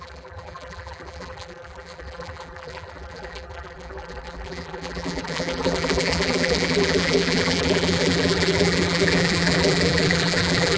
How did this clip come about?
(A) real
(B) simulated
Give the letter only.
B